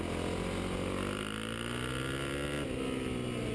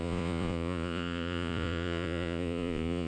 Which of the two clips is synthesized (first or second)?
second